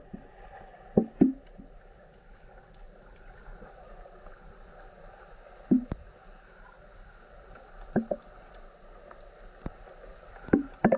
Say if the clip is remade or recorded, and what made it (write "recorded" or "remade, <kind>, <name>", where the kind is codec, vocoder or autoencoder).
recorded